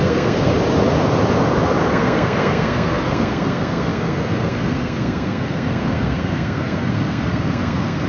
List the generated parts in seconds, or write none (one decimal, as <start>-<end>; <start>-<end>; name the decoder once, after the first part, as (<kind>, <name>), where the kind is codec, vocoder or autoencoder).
0.0-0.5 (codec, SNAC); 1.9-8.1